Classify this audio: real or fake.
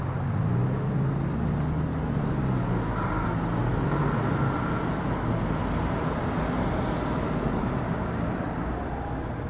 real